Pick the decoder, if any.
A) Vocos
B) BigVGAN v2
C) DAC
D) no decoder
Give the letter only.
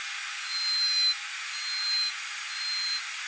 D